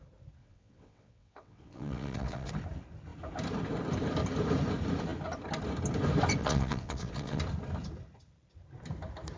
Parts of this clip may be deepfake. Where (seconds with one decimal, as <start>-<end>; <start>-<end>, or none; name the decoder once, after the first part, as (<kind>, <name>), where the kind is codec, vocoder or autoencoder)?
0.4-2.5 (vocoder, WaveNeXt); 6.4-7.4